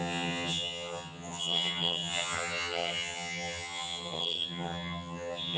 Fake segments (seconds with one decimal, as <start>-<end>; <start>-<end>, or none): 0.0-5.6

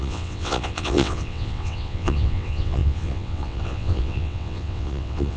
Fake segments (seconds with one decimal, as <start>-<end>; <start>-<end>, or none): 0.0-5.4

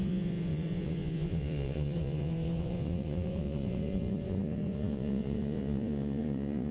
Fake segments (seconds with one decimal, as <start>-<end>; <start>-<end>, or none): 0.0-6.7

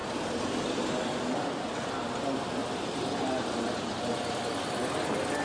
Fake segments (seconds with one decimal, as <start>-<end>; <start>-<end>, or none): 0.0-1.5; 2.6-3.7

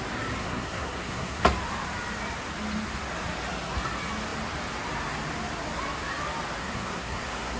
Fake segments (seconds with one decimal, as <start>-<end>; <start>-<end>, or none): 0.4-1.4; 6.6-7.6